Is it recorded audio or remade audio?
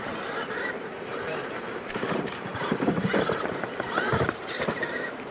remade